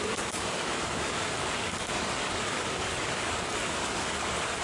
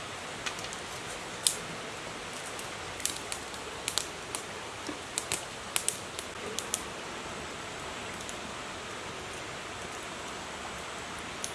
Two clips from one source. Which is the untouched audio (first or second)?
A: second